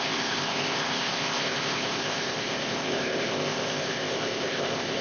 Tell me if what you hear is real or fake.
fake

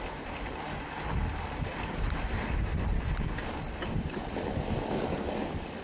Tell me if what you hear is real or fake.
real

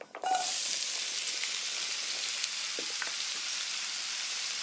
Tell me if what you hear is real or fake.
real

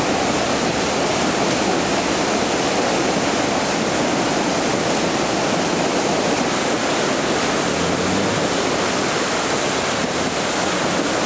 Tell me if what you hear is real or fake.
real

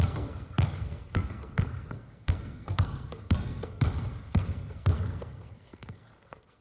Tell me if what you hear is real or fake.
fake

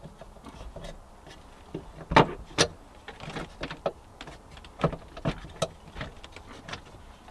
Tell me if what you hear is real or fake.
real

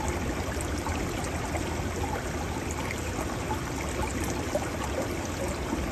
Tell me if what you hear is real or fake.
real